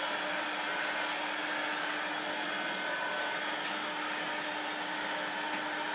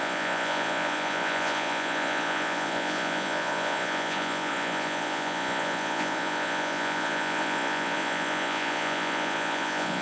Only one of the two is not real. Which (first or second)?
second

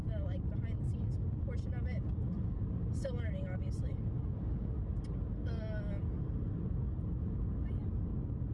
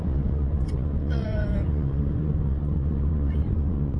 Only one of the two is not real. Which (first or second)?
second